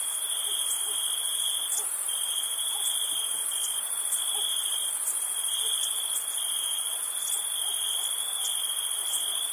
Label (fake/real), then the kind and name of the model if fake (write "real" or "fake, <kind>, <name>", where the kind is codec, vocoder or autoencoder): real